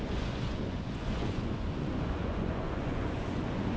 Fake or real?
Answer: fake